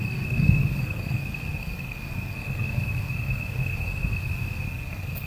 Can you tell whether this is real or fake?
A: fake